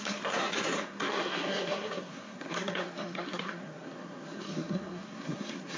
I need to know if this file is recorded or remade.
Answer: remade